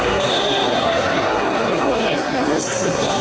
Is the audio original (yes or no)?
no